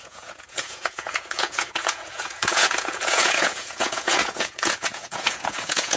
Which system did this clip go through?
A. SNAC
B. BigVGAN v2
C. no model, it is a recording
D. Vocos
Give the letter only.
D